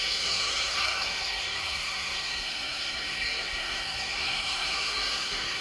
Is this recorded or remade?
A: remade